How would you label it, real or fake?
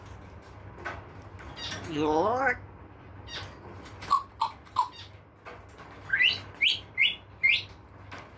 real